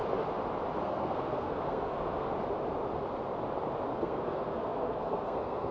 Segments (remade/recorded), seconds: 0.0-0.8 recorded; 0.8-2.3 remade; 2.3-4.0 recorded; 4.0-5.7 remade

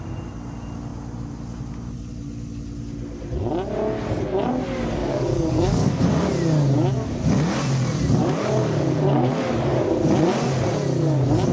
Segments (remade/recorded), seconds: 0.0-5.0 recorded; 5.0-6.0 remade; 6.0-8.2 recorded; 8.2-9.8 remade; 9.8-11.5 recorded

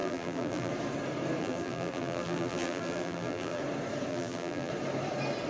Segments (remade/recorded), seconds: 0.0-0.7 remade; 0.7-1.4 recorded; 1.4-3.6 remade; 3.6-4.1 recorded; 4.1-4.7 remade; 4.7-5.5 recorded

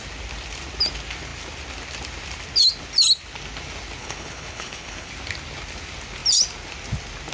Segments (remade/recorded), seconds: 0.0-4.0 recorded; 4.0-5.1 remade; 5.1-7.3 recorded